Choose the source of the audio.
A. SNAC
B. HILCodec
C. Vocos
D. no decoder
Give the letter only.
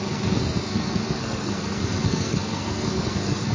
A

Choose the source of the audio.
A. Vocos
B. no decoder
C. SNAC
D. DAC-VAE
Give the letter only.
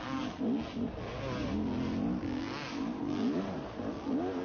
B